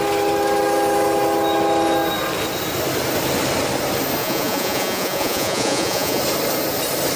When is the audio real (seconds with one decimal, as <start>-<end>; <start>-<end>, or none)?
0.0-4.2; 6.2-7.2